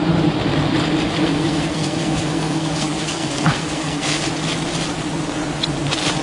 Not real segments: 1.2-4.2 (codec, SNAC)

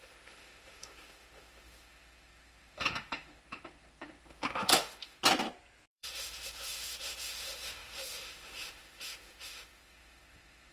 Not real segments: 0.0-5.2 (autoencoder, DAC-VAE); 5.9-10.7

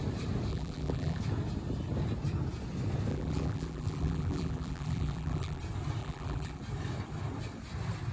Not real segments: 0.5-1.2 (vocoder, BigVGAN v2); 3.1-5.6; 6.0-6.6

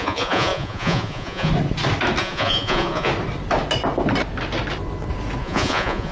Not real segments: 0.0-1.5 (vocoder, Vocos); 2.2-3.1; 5.4-6.1

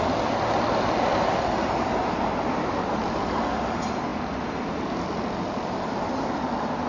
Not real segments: none

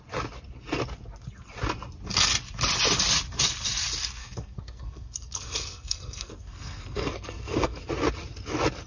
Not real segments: 4.2-7.8 (codec, SNAC)

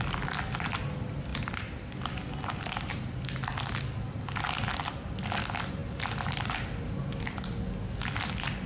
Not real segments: none

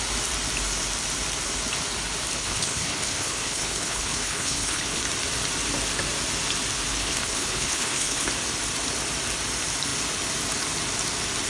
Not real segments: 2.4-5.0 (codec, HILCodec); 6.9-8.3